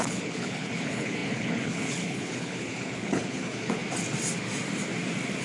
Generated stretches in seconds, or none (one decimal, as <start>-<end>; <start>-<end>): 0.0-3.8